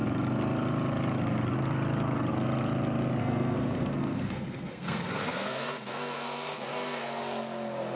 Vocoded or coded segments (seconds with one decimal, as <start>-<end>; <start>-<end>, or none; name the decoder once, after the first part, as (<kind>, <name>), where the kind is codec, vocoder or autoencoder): 3.2-7.2 (codec, SNAC)